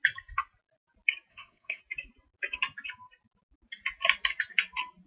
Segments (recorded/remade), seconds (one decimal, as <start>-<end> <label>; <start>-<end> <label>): 0.0-1.3 recorded; 1.3-1.8 remade; 1.8-5.1 recorded